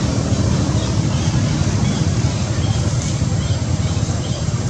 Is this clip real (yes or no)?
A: yes